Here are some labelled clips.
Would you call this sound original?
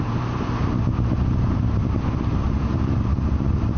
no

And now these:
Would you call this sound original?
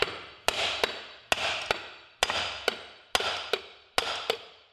yes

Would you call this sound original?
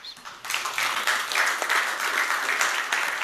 yes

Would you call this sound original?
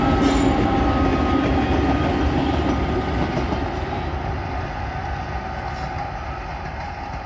yes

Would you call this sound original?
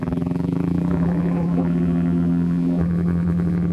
no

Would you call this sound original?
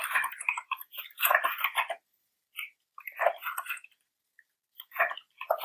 no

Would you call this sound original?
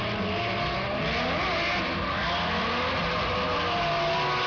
yes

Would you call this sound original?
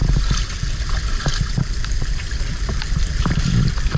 no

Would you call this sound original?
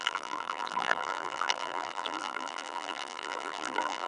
no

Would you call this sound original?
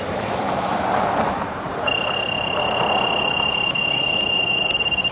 no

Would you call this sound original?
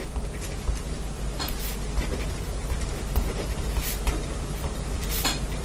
no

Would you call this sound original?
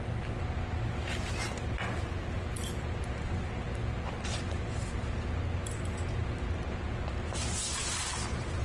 yes